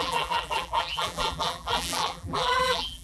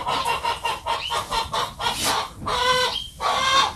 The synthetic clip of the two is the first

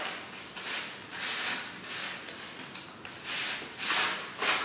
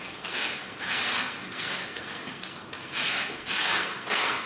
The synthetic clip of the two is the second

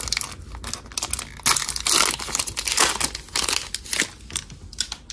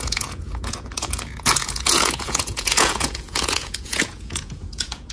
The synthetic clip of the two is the second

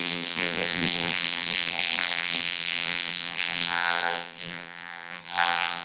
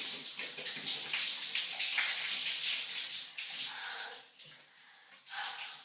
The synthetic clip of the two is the first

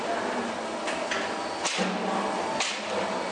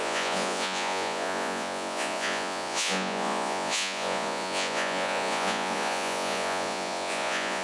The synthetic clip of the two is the second